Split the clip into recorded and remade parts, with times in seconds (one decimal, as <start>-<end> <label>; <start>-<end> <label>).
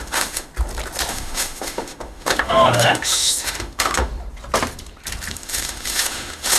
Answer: 0.0-0.5 remade; 0.5-1.1 recorded; 1.1-4.1 remade; 4.1-5.3 recorded; 5.3-6.6 remade